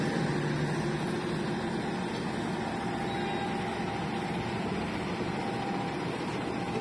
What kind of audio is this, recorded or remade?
recorded